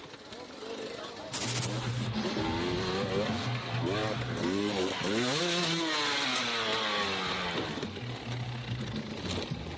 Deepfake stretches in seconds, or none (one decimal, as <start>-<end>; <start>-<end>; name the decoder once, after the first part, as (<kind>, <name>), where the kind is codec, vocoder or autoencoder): none